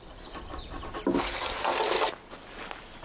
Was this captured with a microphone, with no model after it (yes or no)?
yes